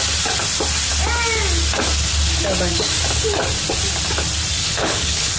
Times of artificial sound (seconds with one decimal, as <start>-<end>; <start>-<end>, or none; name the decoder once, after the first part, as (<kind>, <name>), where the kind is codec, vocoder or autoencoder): 4.6-5.4 (codec, HILCodec)

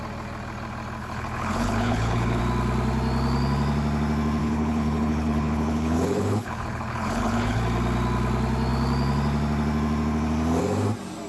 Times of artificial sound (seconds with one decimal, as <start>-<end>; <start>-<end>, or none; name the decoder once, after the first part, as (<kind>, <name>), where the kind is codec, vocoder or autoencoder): 1.0-2.4 (codec, HILCodec); 4.4-7.6

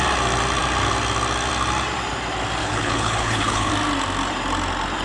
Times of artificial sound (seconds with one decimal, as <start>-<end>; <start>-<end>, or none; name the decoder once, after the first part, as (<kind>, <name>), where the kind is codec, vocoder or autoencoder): 2.6-3.7 (codec, HILCodec)

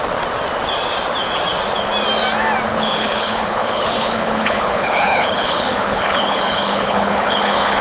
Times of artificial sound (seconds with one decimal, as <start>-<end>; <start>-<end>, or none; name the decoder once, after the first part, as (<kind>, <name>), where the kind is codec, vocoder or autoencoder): 2.7-7.8 (codec, HILCodec)

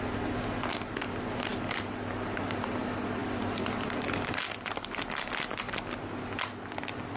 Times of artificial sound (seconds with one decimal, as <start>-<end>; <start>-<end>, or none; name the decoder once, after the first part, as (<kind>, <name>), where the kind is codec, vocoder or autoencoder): none

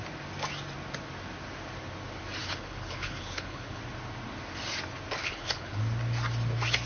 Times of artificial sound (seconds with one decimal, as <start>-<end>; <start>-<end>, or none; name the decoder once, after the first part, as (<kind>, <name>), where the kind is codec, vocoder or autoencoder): 2.4-3.8 (codec, HILCodec); 5.2-5.8